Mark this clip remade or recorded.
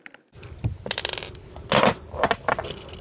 recorded